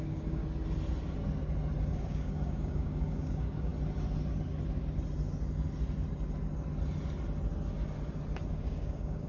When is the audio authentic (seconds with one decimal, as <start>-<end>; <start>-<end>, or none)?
0.4-2.0; 3.7-8.5